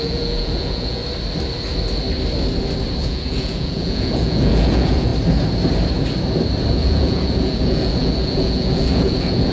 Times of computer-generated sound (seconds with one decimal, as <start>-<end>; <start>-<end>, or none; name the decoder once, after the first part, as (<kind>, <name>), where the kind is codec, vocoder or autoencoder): 0.0-1.0 (vocoder, Vocos); 3.0-5.1; 6.7-9.5